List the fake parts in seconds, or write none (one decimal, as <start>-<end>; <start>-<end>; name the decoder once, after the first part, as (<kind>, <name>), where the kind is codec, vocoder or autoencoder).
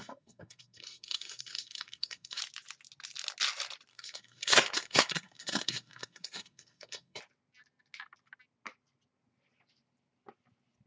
0.0-2.4 (codec, SNAC); 3.9-7.2